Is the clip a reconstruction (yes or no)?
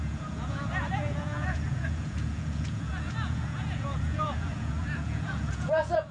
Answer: yes